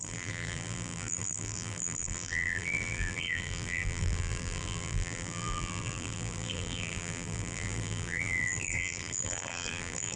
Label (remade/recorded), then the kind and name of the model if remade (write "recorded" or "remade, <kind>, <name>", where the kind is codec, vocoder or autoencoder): remade, vocoder, BigVGAN v2